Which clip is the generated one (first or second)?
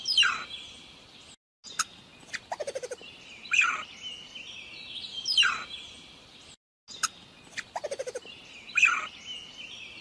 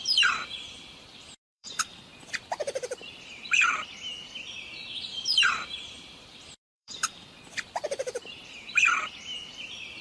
second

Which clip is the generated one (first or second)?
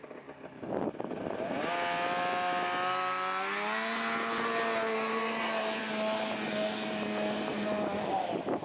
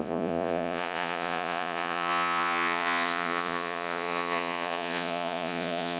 second